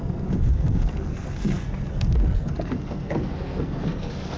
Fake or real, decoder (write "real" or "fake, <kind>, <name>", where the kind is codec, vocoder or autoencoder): fake, codec, SNAC